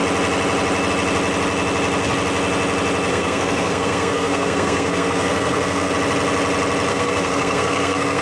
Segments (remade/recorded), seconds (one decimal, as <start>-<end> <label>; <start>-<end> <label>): 0.0-3.1 recorded; 3.1-5.9 remade; 5.9-6.9 recorded; 6.9-8.2 remade